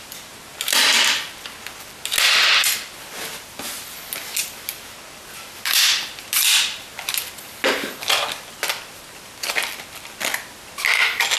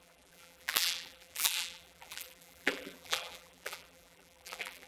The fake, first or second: second